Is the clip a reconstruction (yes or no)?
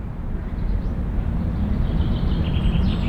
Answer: yes